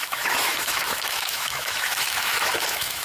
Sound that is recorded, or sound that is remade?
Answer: remade